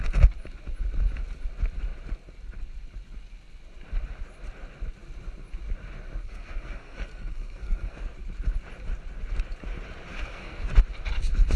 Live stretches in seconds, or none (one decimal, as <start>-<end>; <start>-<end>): 0.0-6.2; 8.1-10.1; 10.7-11.6